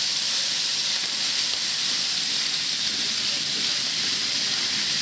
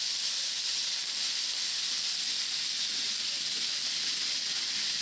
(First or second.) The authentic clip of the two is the second